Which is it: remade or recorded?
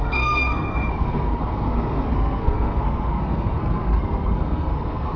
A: remade